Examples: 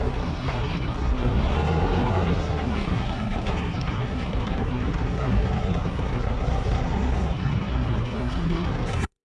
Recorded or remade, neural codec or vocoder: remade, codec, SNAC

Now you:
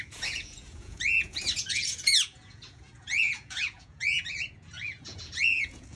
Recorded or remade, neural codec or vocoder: remade, vocoder, Vocos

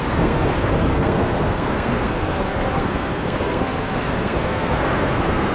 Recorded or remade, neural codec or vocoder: remade, codec, SNAC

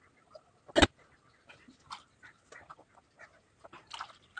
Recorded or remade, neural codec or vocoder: recorded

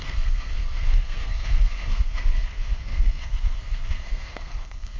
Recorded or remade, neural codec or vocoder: remade, codec, SNAC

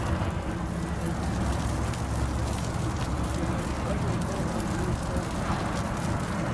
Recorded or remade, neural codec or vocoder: recorded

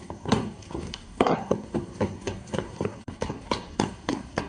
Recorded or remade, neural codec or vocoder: remade, codec, SNAC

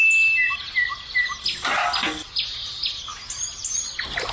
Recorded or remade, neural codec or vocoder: recorded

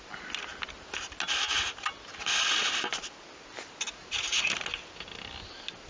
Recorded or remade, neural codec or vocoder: recorded